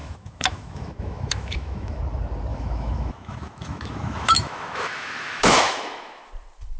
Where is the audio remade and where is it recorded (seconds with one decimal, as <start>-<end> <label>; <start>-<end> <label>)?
0.0-2.0 remade; 2.0-2.5 recorded; 2.5-6.3 remade; 6.3-6.8 recorded